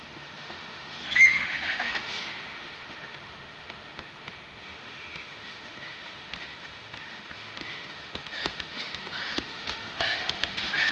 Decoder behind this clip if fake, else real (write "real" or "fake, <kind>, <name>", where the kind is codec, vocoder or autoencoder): fake, autoencoder, DAC-VAE